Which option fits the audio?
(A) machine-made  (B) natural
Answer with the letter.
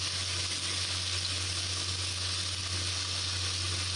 B